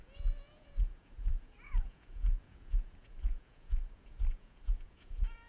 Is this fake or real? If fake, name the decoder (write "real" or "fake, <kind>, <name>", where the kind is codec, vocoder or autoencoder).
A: fake, vocoder, Vocos